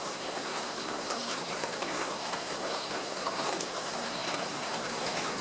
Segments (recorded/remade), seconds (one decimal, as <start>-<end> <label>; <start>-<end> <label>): 0.0-5.4 remade

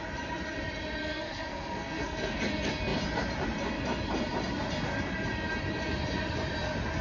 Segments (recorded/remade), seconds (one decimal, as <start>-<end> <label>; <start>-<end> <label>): 0.0-1.0 recorded; 1.0-2.4 remade; 2.4-7.0 recorded

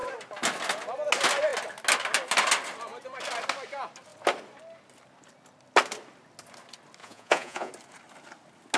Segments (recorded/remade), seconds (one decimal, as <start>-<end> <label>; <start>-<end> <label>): 0.0-7.0 recorded; 7.0-7.7 remade; 7.7-8.8 recorded